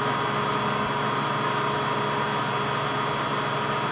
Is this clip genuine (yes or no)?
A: yes